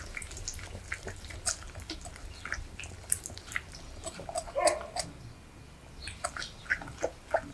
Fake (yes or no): no